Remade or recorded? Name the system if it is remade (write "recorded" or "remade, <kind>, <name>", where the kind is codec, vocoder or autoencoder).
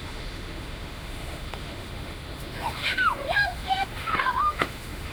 remade, autoencoder, DAC-VAE